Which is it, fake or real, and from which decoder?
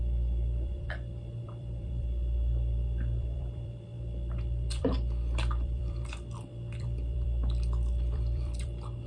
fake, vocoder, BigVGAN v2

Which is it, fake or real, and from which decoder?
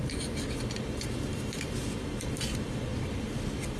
fake, vocoder, BigVGAN v2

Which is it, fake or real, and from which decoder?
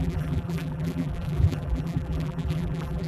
fake, vocoder, BigVGAN v2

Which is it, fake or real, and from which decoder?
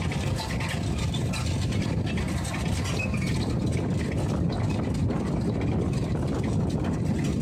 real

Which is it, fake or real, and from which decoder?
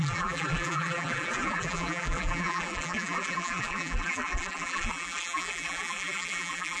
fake, vocoder, BigVGAN v2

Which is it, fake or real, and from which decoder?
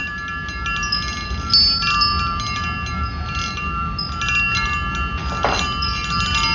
real